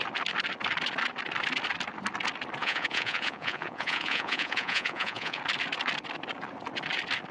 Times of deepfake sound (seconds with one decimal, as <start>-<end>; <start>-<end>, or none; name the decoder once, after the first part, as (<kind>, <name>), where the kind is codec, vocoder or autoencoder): 2.6-5.4 (vocoder, Vocos)